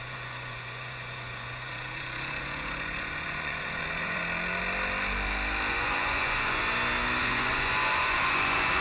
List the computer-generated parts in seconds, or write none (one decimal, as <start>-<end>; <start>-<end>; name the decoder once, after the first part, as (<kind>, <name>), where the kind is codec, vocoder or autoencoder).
0.0-4.2 (vocoder, Vocos); 5.7-6.6; 7.2-8.8